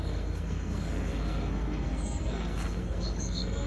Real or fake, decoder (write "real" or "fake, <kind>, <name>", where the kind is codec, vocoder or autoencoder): fake, codec, SNAC